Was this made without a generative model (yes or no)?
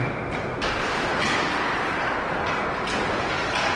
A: yes